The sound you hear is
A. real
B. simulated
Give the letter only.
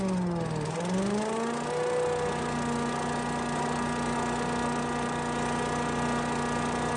A